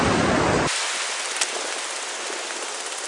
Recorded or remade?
recorded